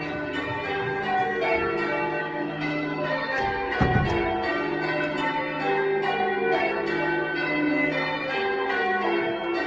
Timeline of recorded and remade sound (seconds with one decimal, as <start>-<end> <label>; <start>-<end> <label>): 0.0-2.2 recorded; 2.2-3.7 remade; 3.7-9.7 recorded